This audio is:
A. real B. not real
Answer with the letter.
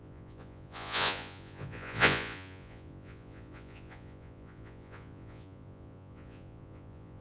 B